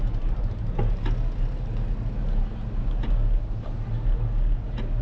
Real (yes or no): yes